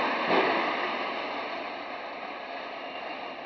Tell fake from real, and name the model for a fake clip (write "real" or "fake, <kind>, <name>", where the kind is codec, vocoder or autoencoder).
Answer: fake, vocoder, BigVGAN v2